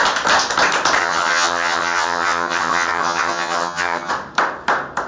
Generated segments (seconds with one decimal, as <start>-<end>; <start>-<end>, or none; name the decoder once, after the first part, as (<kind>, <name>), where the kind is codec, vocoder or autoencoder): 1.0-4.1 (vocoder, HiFi-GAN)